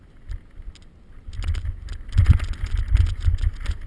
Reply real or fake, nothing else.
real